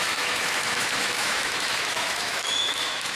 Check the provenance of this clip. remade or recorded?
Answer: remade